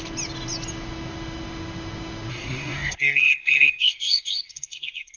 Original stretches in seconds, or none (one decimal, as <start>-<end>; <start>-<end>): 0.0-2.3